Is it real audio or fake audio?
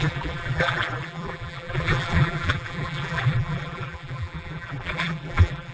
fake